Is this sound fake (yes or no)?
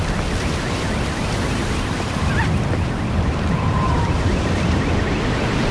no